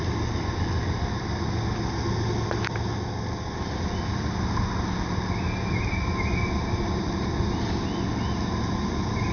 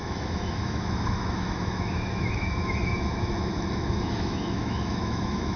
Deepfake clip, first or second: second